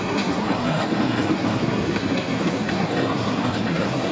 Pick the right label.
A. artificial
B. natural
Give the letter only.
A